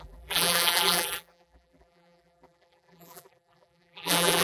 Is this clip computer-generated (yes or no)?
yes